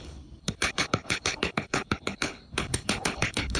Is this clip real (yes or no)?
no